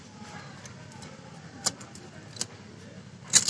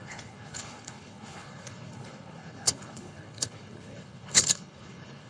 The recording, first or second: first